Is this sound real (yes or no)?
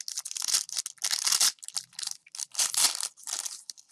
yes